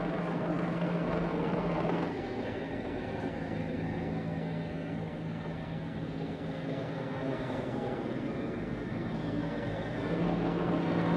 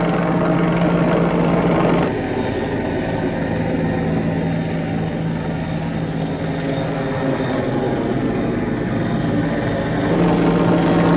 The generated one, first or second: first